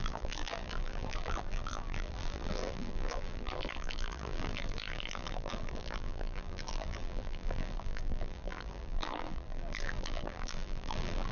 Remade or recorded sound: remade